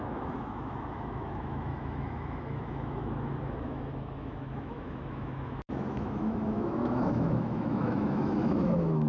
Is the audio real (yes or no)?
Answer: no